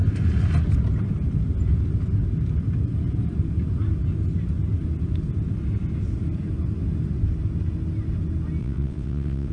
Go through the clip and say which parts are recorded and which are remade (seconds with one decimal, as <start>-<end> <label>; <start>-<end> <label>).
0.0-8.6 recorded; 8.6-9.5 remade